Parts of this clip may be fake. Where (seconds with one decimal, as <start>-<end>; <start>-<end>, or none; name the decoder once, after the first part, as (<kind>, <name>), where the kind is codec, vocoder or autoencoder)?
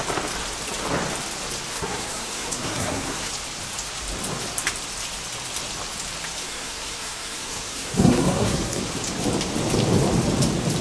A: 1.7-3.3 (codec, SNAC); 6.4-8.8